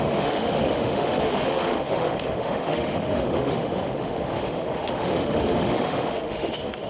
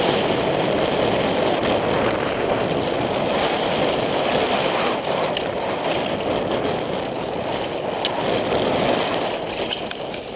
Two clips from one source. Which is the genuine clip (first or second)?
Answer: second